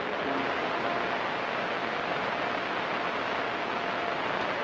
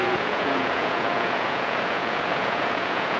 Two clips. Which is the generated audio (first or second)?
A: second